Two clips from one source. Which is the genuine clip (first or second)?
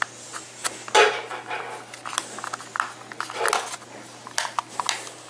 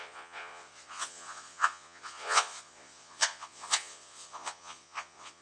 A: first